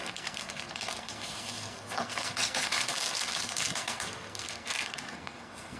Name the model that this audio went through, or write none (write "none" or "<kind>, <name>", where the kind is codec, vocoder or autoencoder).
codec, SNAC